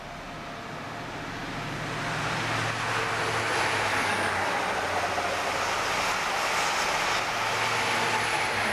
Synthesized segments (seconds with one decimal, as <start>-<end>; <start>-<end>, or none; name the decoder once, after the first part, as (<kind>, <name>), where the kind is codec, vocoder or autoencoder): 3.9-4.5 (codec, DAC)